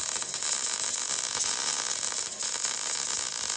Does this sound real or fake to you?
real